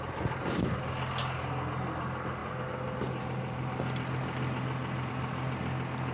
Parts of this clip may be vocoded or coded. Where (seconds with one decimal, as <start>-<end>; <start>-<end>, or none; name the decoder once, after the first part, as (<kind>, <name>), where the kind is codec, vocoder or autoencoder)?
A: none